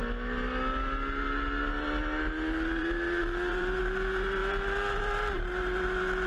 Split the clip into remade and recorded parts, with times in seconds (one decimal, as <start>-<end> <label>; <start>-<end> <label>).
0.0-2.8 recorded; 2.8-6.3 remade